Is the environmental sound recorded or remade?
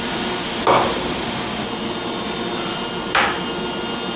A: recorded